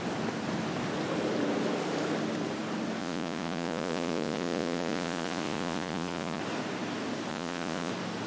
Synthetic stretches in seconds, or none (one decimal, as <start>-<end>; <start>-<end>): 3.0-6.4; 7.3-7.9